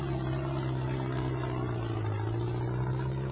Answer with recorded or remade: recorded